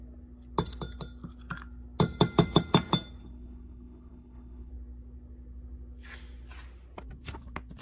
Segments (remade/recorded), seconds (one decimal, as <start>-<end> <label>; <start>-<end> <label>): 0.0-3.2 recorded; 3.2-4.7 remade; 4.7-7.8 recorded